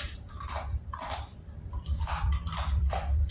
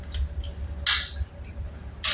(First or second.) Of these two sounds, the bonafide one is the second